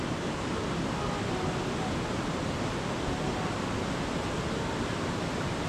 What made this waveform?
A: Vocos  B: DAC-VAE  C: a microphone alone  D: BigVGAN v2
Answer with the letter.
C